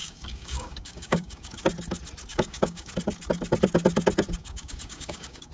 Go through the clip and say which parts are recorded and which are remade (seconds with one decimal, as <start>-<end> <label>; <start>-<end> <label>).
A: 0.0-1.6 remade; 1.6-2.3 recorded; 2.3-2.9 remade; 2.9-4.4 recorded; 4.4-5.5 remade